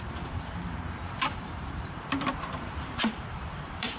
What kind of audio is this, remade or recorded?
remade